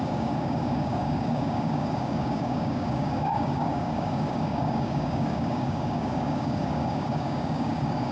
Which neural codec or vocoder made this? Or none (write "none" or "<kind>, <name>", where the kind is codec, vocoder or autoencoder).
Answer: codec, DAC